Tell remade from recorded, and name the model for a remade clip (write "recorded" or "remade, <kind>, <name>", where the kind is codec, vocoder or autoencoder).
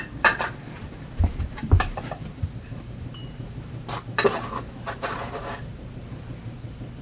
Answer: remade, vocoder, BigVGAN v2